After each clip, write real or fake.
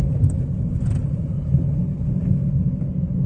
real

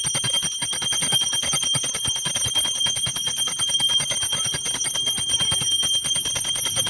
fake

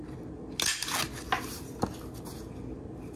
real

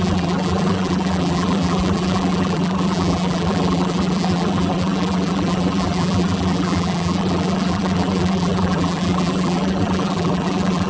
fake